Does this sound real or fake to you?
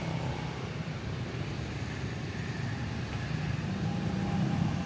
real